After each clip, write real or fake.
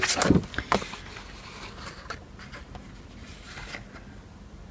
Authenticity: real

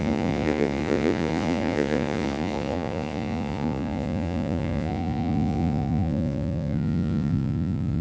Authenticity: fake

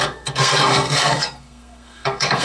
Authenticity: fake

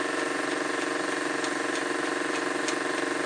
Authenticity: real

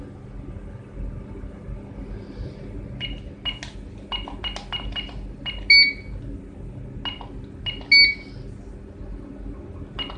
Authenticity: real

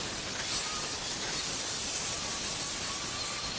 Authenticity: real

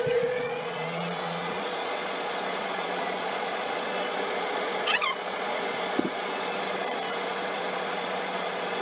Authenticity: fake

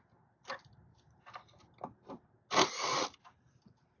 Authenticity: real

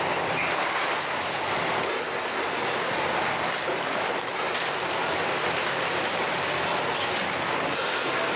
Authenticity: real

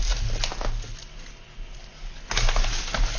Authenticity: real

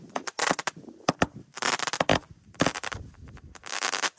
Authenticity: real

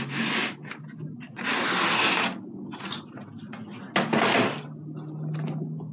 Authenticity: real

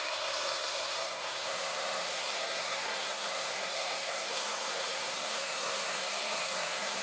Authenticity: fake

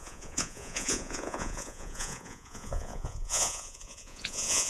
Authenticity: fake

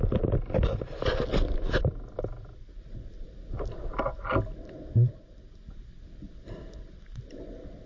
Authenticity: fake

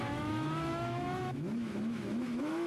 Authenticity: fake